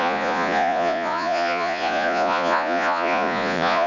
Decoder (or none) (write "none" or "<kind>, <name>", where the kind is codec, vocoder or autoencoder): vocoder, Vocos